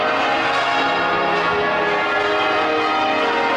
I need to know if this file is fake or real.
real